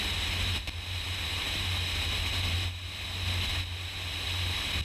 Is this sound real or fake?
real